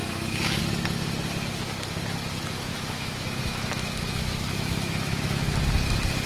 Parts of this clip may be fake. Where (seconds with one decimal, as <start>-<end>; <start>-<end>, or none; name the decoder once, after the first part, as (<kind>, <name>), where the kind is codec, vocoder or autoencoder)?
0.0-0.6 (autoencoder, DAC-VAE); 2.7-5.5